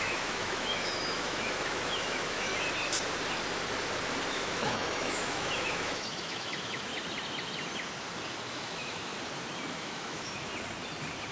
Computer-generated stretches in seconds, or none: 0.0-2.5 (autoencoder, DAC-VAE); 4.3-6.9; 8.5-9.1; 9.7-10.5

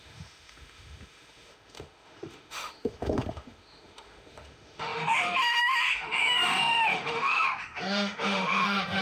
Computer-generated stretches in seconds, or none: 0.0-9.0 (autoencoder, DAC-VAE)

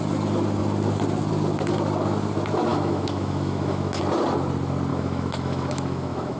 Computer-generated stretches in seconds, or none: 2.7-4.0 (autoencoder, DAC-VAE); 4.9-6.4